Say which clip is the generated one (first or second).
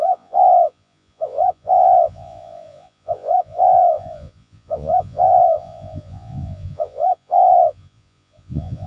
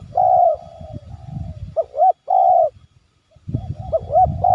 first